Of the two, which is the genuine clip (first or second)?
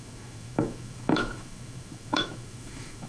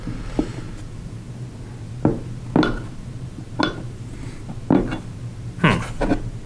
second